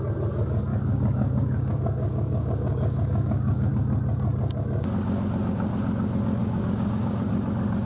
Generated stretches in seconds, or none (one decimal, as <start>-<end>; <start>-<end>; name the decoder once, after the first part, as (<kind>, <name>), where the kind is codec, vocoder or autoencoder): 0.7-3.7 (codec, DAC); 6.4-7.3